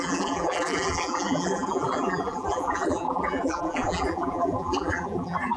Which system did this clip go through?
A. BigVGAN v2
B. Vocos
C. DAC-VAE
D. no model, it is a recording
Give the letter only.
A